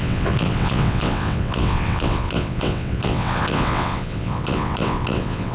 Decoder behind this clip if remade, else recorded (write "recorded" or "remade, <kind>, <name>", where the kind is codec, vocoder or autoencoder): remade, vocoder, WaveNeXt